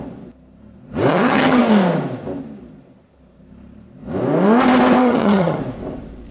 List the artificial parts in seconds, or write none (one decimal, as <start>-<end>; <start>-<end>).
1.1-1.6; 5.0-5.6